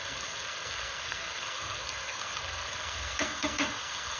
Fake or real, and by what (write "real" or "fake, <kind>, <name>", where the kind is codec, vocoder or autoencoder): fake, codec, SNAC